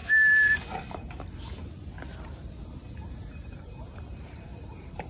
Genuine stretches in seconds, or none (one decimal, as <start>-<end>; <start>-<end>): 0.0-3.1